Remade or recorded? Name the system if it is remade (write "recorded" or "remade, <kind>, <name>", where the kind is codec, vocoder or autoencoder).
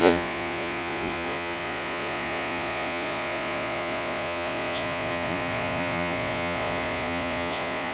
remade, vocoder, Vocos